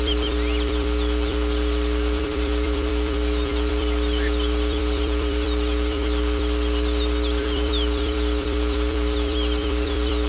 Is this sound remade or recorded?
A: remade